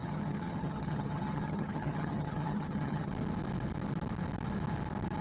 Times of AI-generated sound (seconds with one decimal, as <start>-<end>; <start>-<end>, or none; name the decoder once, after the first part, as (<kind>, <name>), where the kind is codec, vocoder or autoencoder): 0.0-3.1 (vocoder, HiFi-GAN)